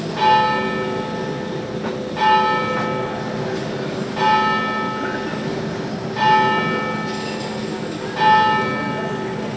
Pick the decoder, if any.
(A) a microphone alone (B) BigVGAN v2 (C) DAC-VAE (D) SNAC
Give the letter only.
A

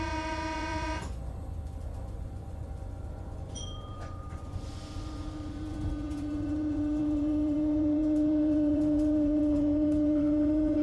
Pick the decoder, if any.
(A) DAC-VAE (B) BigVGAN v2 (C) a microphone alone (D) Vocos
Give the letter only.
D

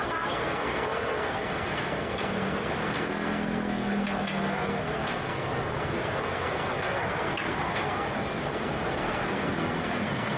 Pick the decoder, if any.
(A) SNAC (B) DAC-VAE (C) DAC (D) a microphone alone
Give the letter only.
A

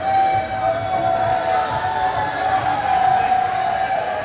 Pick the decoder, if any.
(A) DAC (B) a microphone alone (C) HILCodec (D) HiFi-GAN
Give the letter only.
B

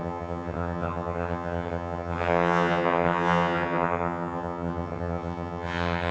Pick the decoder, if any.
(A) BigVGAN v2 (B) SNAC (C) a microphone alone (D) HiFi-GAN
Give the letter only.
D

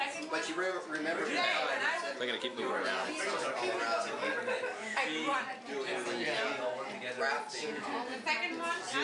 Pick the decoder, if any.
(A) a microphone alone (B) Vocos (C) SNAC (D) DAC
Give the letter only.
A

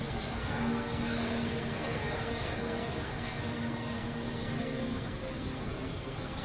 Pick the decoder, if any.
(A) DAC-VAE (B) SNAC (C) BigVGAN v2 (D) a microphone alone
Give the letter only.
B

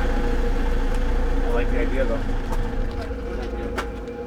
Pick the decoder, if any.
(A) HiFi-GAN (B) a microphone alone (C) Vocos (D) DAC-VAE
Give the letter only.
B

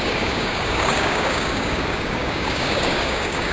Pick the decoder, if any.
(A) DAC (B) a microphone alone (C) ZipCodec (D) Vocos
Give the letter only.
A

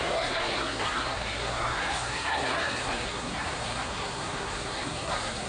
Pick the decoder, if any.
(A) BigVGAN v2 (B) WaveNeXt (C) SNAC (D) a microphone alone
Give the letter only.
C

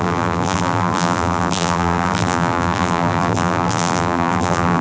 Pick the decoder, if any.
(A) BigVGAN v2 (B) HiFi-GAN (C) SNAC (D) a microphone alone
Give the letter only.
A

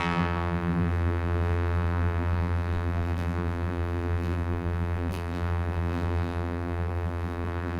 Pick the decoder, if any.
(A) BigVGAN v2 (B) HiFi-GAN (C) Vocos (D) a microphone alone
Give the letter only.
A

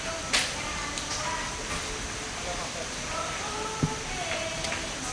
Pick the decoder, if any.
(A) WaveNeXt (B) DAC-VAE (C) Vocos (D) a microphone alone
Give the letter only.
D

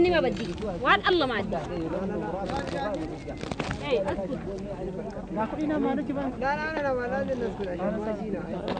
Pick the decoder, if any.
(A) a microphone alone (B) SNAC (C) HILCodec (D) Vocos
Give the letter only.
A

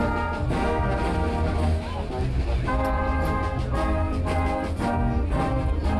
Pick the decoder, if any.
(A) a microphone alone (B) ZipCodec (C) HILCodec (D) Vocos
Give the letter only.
A